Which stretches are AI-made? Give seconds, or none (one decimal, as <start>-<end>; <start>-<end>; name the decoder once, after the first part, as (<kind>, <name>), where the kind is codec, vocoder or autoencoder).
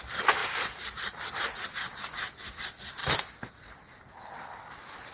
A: none